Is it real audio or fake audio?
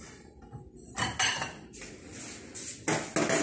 real